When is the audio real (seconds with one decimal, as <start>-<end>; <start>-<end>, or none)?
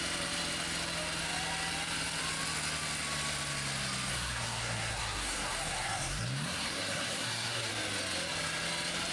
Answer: 0.0-4.1; 7.7-9.1